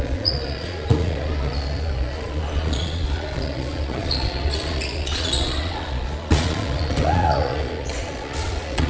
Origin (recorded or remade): remade